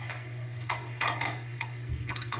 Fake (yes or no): yes